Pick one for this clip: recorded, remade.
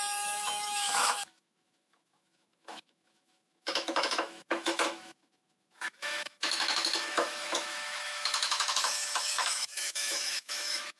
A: remade